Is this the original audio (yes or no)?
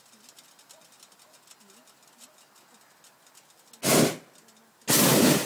yes